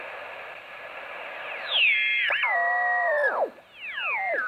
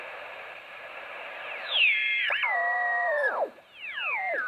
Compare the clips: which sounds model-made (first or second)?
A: second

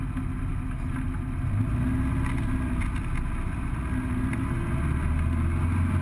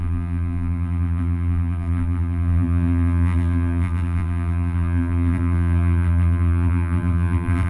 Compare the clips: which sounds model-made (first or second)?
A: second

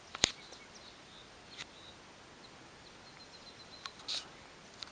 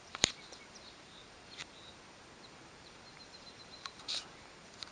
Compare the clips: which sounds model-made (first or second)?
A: second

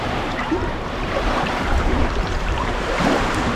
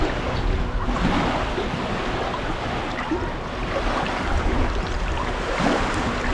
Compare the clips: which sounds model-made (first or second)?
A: first